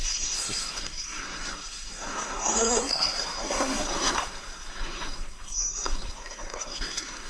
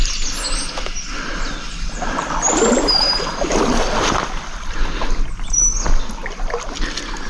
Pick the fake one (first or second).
first